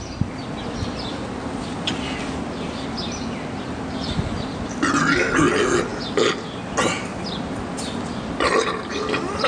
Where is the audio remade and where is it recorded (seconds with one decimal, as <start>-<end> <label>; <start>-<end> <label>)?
0.0-9.5 recorded